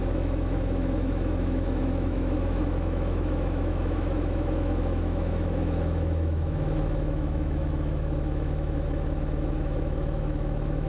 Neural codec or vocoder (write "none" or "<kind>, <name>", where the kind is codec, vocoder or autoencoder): autoencoder, DAC-VAE